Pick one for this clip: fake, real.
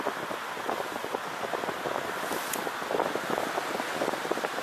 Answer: real